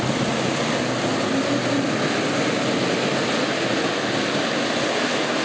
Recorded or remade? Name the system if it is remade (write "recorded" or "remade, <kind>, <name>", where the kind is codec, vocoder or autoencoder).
recorded